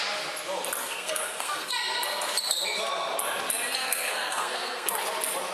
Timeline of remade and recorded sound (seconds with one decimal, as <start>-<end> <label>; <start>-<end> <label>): 0.0-0.8 recorded; 0.8-1.7 remade; 1.7-3.8 recorded; 3.8-4.9 remade; 4.9-5.5 recorded